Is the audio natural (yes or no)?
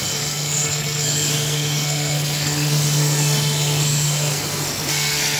no